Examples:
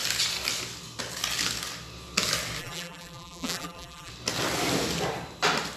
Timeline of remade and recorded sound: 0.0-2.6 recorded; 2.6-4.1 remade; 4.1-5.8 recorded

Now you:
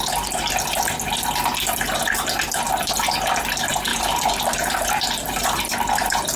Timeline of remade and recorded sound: 0.0-3.9 recorded; 3.9-5.6 remade; 5.6-6.4 recorded

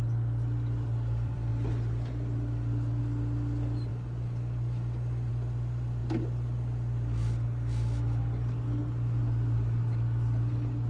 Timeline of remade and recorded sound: 0.0-1.5 remade; 1.5-3.0 recorded; 3.0-3.9 remade; 3.9-5.3 recorded; 5.3-6.0 remade; 6.0-10.9 recorded

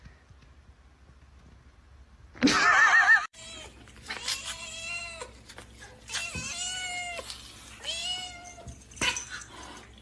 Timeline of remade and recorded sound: 0.0-2.8 recorded; 2.8-5.0 remade; 5.0-8.0 recorded; 8.0-8.5 remade; 8.5-10.0 recorded